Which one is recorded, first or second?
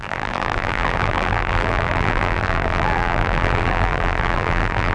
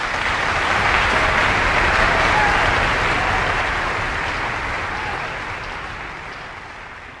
second